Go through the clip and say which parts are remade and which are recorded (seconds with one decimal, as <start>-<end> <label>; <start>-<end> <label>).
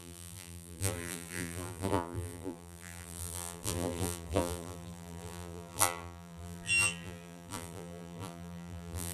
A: 0.0-9.1 remade